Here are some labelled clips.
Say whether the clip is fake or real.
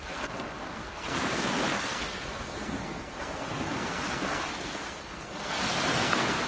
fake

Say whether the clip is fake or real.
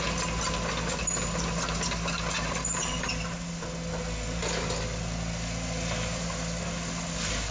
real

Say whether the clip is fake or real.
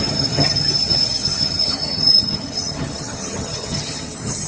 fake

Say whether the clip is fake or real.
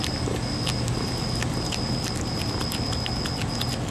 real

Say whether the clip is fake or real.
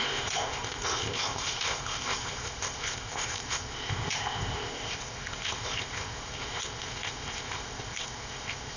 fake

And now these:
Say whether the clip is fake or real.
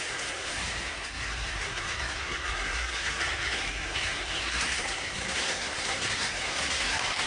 fake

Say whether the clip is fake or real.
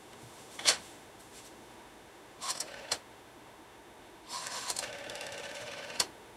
fake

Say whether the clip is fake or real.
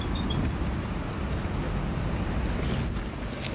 real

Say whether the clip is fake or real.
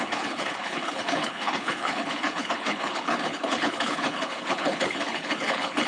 fake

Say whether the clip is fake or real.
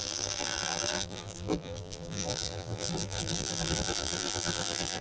fake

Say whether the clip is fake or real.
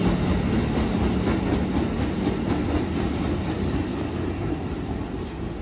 real